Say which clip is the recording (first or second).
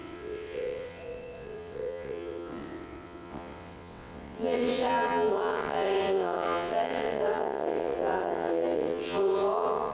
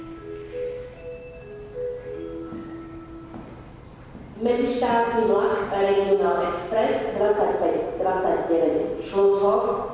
second